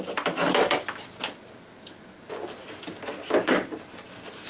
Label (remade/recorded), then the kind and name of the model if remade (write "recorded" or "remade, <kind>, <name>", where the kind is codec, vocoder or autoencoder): recorded